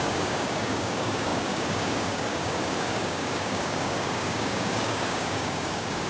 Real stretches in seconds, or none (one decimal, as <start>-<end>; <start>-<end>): none